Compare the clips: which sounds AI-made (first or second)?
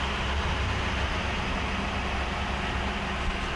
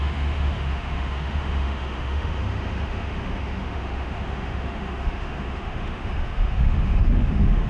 second